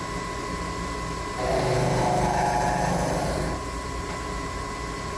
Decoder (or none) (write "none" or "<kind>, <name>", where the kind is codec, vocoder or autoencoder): vocoder, BigVGAN v2